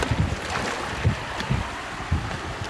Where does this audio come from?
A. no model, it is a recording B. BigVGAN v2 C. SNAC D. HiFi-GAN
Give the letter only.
A